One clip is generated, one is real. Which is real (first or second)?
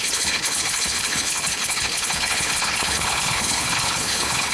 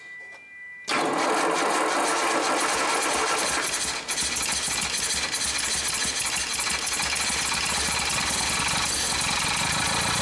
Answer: second